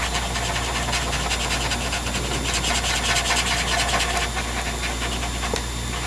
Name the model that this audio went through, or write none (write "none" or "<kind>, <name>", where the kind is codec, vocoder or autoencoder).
none